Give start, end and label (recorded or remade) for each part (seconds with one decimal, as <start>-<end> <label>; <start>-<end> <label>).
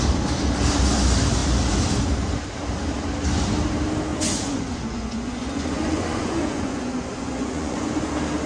0.0-4.1 recorded; 4.1-8.1 remade; 8.1-8.5 recorded